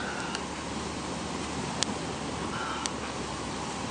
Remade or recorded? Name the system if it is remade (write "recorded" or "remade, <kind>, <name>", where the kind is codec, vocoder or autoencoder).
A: recorded